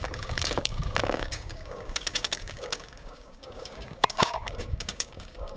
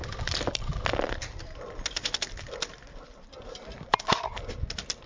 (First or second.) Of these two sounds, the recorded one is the second